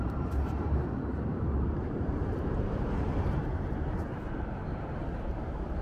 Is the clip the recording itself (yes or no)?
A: no